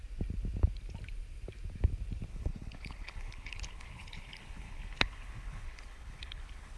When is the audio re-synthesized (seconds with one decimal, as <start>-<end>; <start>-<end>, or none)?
2.3-6.8